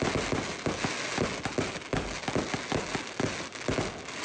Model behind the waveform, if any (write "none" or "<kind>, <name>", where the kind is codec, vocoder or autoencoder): none